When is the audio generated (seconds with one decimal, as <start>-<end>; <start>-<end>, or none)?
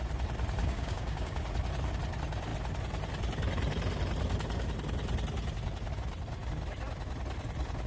0.6-1.4